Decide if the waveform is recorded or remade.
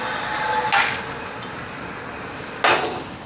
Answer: recorded